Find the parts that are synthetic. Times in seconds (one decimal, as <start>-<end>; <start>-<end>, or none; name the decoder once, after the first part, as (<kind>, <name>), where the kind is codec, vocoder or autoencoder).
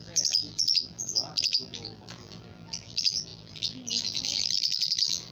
0.0-5.3 (vocoder, BigVGAN v2)